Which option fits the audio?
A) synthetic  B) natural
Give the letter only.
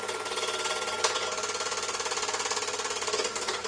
B